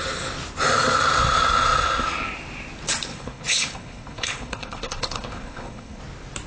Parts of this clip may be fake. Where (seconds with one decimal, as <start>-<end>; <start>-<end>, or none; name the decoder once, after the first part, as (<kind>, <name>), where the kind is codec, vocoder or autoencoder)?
3.1-6.0 (codec, HILCodec)